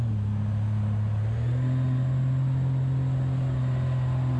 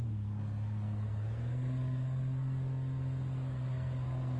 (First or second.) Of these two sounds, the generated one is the second